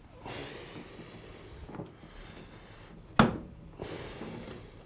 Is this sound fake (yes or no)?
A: no